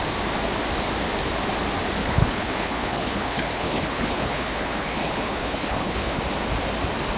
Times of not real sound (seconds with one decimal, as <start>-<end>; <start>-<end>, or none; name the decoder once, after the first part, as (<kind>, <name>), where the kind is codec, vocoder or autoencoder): 2.0-6.2 (codec, HILCodec)